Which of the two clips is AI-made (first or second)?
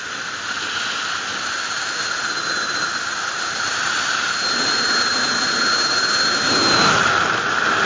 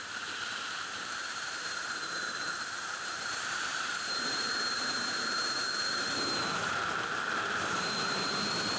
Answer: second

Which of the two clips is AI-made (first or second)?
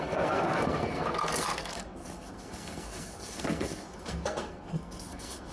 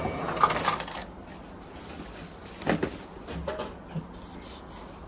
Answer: first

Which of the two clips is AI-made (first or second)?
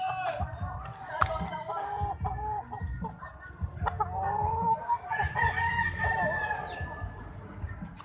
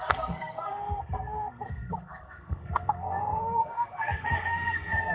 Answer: second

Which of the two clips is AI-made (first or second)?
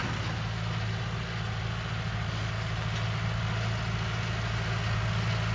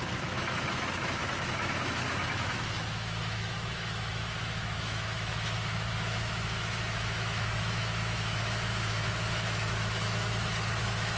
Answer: second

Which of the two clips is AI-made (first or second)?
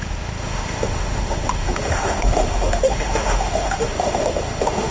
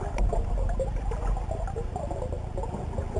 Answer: first